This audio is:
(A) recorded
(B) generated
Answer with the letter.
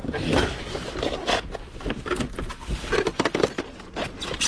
A